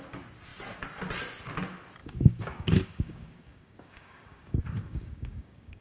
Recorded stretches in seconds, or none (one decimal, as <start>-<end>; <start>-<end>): 0.0-2.0